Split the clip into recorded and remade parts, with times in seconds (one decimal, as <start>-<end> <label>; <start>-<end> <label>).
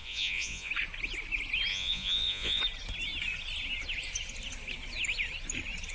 0.0-0.7 remade; 0.7-1.7 recorded; 1.7-2.6 remade; 2.6-5.9 recorded